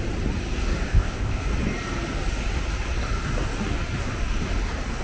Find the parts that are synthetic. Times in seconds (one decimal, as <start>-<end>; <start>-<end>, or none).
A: 0.9-1.4

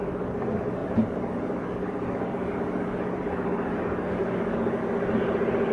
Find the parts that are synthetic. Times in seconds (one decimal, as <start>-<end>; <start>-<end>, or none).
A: 0.0-4.8

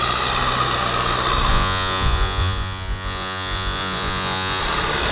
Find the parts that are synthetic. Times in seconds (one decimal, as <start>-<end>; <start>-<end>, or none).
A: 1.5-4.6

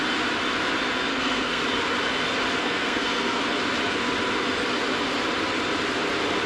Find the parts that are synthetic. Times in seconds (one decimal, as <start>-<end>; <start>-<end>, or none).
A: 1.1-1.6; 2.6-3.4

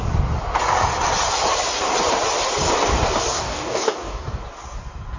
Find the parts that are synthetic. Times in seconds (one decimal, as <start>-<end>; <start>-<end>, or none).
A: 3.3-4.4

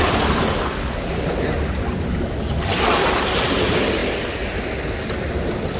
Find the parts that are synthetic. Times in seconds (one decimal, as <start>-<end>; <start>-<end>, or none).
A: none

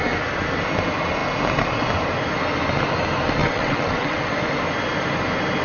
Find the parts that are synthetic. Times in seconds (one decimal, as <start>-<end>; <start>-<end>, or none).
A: 3.4-4.3

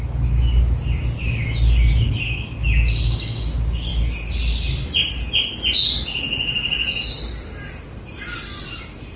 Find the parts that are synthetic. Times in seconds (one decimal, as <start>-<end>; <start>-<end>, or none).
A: none